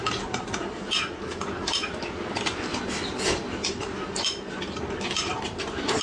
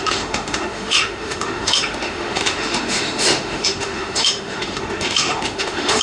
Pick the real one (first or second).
first